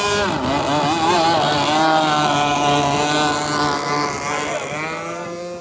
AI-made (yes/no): no